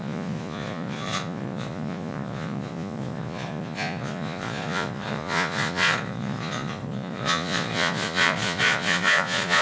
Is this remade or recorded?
remade